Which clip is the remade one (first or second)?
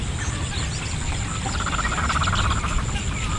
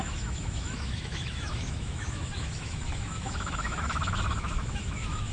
second